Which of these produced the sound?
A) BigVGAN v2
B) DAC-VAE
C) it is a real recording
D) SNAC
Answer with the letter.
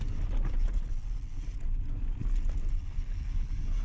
C